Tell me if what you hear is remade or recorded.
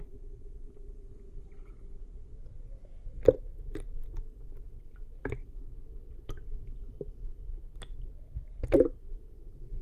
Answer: recorded